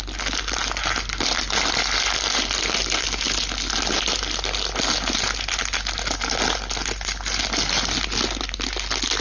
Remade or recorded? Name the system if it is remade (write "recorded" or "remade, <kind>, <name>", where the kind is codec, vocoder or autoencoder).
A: recorded